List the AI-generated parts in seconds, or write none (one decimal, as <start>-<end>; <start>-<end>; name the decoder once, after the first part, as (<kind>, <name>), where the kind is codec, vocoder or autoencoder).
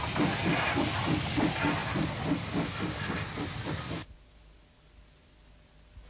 1.8-5.5 (vocoder, BigVGAN v2)